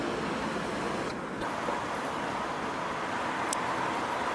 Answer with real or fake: real